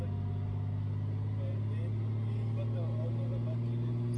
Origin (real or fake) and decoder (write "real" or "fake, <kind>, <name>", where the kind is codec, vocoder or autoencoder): real